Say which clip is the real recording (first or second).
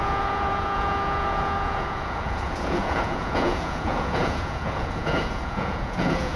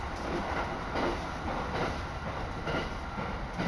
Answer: second